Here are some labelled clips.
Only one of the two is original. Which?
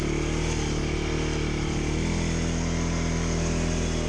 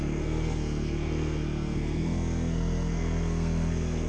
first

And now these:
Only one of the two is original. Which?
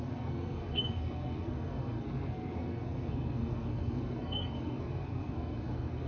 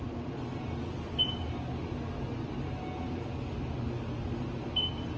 second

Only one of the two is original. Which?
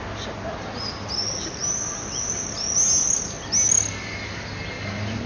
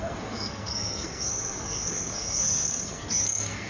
first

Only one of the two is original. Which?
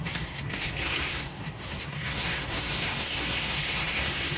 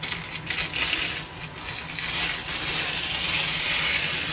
second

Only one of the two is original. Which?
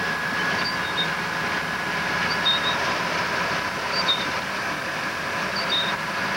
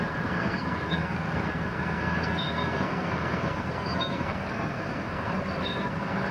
first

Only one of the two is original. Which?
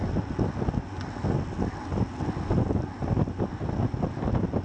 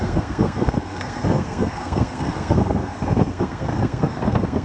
first